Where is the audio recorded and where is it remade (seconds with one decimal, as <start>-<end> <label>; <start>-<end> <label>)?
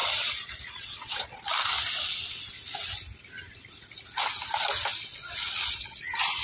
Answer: 0.0-1.4 remade; 1.4-5.1 recorded; 5.1-6.0 remade; 6.0-6.4 recorded